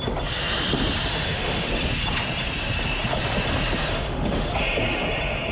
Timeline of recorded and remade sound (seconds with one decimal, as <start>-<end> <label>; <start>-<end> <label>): 0.0-1.1 recorded; 1.1-1.7 remade; 1.7-3.9 recorded; 3.9-4.5 remade; 4.5-5.5 recorded